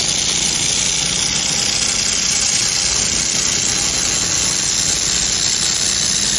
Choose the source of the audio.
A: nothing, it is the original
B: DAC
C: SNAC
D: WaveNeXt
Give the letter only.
A